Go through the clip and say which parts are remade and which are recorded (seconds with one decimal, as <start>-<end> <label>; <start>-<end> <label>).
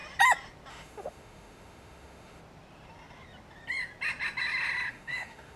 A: 0.0-0.7 recorded; 0.7-2.4 remade; 2.4-4.9 recorded; 4.9-5.6 remade